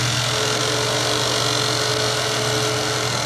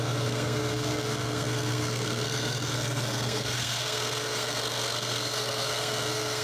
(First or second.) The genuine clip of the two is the first